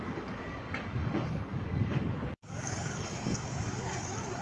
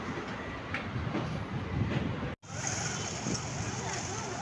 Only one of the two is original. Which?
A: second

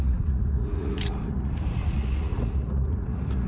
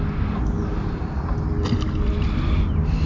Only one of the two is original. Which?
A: second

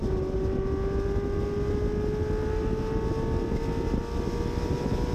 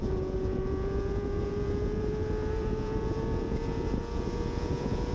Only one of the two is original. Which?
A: first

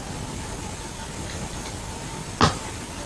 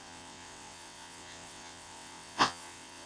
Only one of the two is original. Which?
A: first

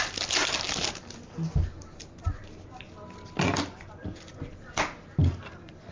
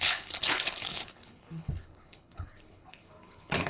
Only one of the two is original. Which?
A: first